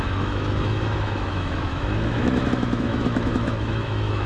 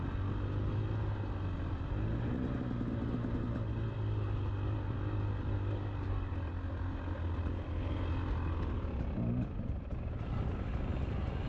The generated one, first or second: first